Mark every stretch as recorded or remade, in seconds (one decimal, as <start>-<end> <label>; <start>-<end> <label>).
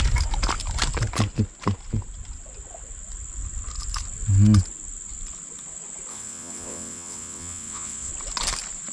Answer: 0.0-6.1 recorded; 6.1-8.1 remade; 8.1-8.9 recorded